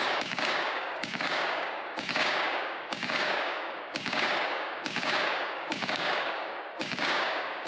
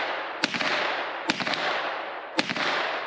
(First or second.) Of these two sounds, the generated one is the first